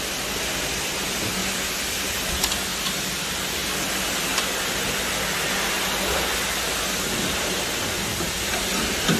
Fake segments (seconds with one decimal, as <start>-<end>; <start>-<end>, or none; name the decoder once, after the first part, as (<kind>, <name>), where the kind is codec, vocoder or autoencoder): none